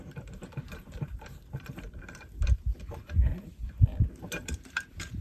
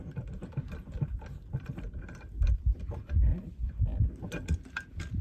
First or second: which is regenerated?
first